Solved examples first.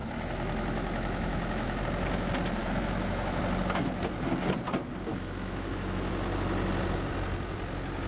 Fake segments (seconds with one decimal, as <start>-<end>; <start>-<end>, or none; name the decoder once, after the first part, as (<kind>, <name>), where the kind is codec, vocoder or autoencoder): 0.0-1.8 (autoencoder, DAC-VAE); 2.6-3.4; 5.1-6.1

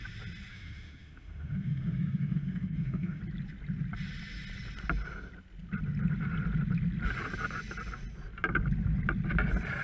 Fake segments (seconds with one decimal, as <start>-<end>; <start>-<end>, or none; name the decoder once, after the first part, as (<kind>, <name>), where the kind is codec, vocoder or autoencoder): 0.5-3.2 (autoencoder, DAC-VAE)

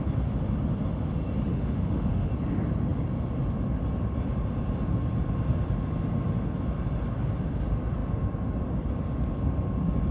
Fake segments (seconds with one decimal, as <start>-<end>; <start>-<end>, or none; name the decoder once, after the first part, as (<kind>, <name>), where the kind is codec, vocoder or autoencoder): 1.5-2.3 (autoencoder, DAC-VAE)

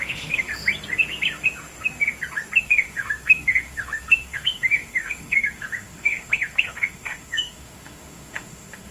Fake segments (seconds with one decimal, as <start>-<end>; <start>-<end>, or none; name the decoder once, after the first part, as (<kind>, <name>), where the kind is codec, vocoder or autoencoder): 0.0-0.5 (autoencoder, DAC-VAE); 2.6-8.9